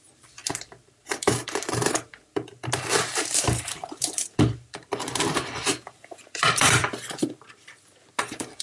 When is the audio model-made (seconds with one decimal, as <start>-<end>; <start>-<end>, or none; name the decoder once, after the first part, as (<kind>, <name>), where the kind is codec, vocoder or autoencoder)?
0.0-6.8 (vocoder, BigVGAN v2); 8.2-8.6